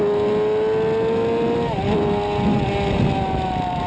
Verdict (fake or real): real